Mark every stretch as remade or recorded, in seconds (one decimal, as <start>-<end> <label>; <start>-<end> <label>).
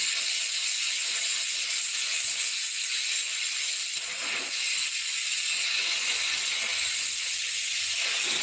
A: 0.0-3.6 remade; 3.6-5.7 recorded; 5.7-6.3 remade; 6.3-8.4 recorded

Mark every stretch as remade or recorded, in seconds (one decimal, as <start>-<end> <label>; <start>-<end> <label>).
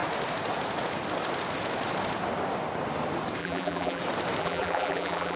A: 0.0-3.4 recorded; 3.4-4.0 remade; 4.0-4.4 recorded; 4.4-5.4 remade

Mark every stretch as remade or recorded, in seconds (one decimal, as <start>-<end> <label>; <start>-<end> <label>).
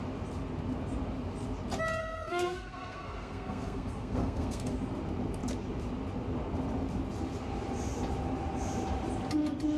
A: 0.0-2.0 recorded; 2.0-4.7 remade; 4.7-9.8 recorded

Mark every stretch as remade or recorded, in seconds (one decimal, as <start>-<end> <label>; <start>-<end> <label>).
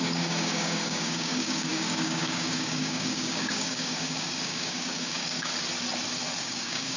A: 0.0-5.5 remade; 5.5-6.4 recorded; 6.4-7.0 remade